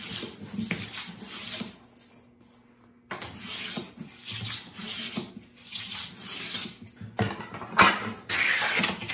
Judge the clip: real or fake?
real